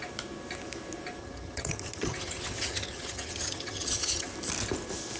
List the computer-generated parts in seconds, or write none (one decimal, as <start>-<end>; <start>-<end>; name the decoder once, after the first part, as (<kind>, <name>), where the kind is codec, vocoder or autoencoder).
1.2-4.3 (vocoder, HiFi-GAN)